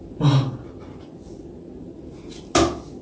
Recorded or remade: recorded